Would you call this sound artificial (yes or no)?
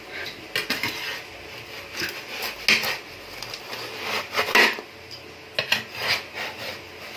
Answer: no